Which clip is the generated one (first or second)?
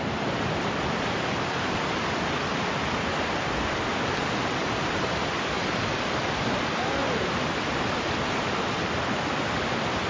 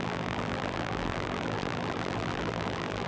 second